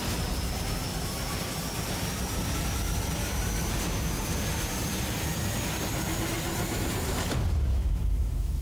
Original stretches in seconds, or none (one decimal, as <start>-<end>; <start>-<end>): 0.0-7.7